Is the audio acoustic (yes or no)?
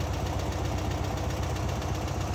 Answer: yes